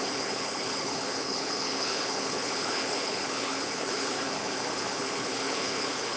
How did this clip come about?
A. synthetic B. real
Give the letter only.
A